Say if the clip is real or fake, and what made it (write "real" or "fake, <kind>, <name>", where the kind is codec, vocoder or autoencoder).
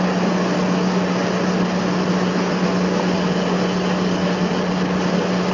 real